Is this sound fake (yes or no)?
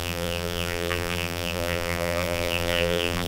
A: yes